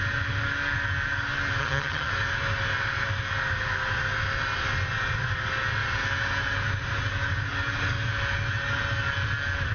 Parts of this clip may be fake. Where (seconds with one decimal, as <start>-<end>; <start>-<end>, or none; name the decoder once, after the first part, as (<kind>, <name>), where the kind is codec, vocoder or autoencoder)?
1.6-2.1 (vocoder, HiFi-GAN)